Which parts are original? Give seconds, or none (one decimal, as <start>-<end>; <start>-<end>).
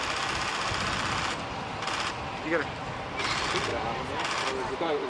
0.0-5.1